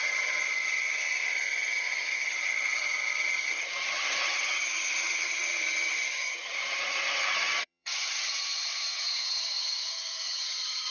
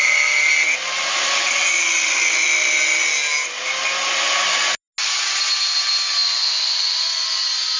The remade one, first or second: first